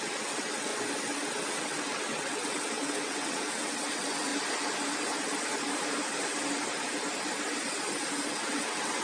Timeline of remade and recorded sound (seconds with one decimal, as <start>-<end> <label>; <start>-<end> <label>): 0.0-0.7 remade; 0.7-1.5 recorded; 1.5-4.3 remade; 4.3-8.3 recorded; 8.3-9.0 remade